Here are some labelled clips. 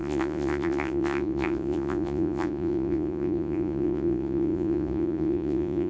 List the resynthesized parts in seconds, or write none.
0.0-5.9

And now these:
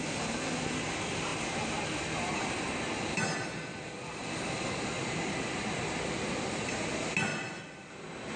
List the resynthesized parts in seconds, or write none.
7.3-7.9

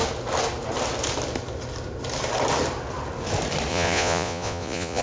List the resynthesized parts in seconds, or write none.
3.7-5.0

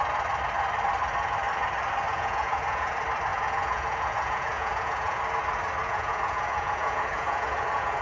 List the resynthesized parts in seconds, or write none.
2.1-2.9; 3.3-5.2; 5.8-8.0